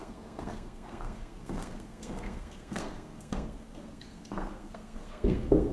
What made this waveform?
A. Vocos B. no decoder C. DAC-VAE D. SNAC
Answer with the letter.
D